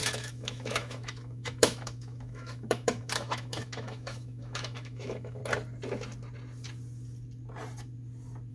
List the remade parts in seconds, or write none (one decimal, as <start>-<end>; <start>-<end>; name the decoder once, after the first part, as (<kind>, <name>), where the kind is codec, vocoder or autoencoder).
0.0-5.4 (autoencoder, DAC-VAE)